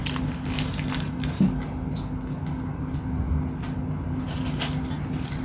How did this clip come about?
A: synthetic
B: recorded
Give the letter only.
B